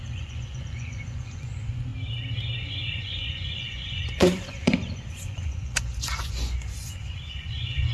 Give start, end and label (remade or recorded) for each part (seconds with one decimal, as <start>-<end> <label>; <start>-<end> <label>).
0.0-1.9 remade; 1.9-2.6 recorded; 2.6-7.9 remade